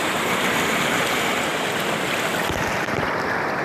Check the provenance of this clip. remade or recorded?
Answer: recorded